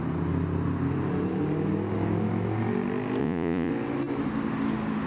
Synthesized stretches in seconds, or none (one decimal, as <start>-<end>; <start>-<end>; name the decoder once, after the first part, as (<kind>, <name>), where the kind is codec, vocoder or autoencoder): 3.2-3.7 (vocoder, Vocos)